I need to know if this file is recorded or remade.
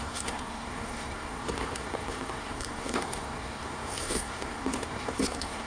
remade